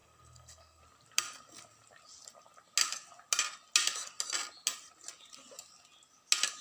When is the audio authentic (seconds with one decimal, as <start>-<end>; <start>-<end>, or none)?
0.8-6.6

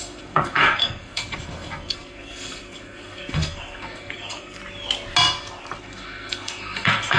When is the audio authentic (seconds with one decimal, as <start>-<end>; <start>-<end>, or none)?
4.6-5.8

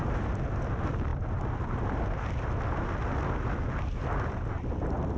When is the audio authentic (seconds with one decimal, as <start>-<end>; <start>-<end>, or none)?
0.0-5.2

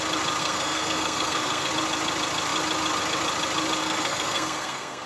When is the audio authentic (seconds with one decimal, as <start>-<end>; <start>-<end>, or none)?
0.0-0.4; 1.7-3.8